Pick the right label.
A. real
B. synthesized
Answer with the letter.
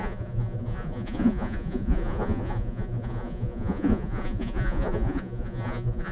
B